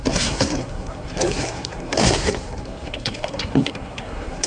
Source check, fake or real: fake